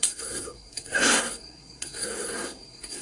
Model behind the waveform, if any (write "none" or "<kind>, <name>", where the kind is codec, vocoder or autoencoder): codec, SNAC